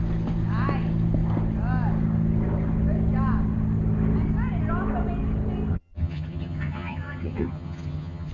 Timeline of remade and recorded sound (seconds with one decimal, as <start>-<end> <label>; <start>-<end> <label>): 0.0-5.7 recorded; 5.7-8.3 remade

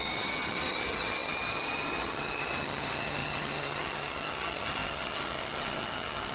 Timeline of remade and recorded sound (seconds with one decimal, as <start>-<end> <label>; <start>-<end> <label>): 0.0-6.3 remade

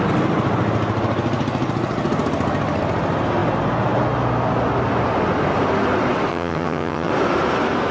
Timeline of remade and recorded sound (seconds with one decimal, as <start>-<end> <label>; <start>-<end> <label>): 0.0-6.3 recorded; 6.3-7.1 remade; 7.1-7.9 recorded